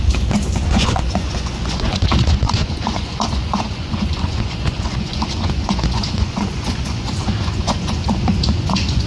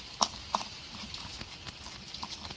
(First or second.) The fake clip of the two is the first